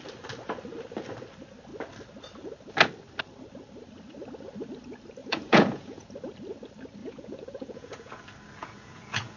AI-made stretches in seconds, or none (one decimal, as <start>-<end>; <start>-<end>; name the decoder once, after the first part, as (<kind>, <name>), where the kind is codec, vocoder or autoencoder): 5.2-6.1 (vocoder, Vocos); 7.0-8.2; 8.6-9.4